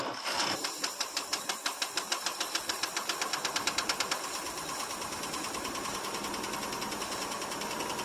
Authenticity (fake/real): real